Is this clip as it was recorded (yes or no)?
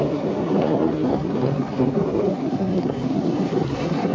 no